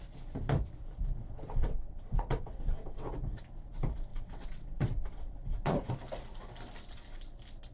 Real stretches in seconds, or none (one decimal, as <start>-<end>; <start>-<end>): 0.0-1.2; 3.4-4.1; 5.9-7.7

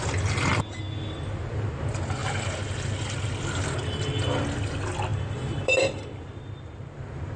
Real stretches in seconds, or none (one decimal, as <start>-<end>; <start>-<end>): 0.0-2.2; 3.3-5.1; 6.4-7.4

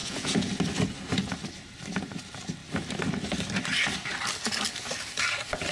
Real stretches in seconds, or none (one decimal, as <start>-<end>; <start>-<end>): 0.6-5.7

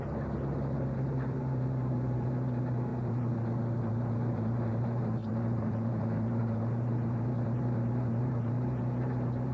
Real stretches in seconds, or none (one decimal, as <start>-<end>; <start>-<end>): 2.9-3.8

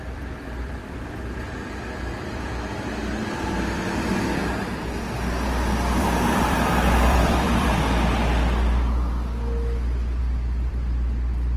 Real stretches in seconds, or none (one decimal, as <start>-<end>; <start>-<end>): 4.4-6.0; 7.7-10.2

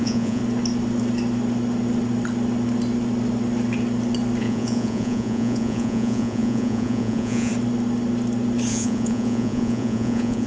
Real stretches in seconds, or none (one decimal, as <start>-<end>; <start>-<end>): 0.4-4.4; 7.5-8.7